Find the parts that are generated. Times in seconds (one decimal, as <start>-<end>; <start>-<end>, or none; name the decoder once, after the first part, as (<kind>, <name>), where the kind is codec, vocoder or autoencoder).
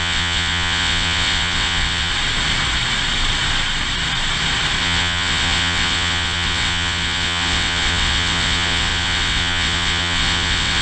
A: 0.0-2.1 (vocoder, WaveNeXt); 4.8-10.8